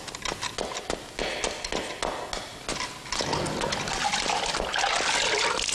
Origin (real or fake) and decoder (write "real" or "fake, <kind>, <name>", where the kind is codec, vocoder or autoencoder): real